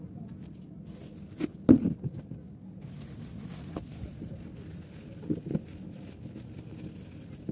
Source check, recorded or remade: recorded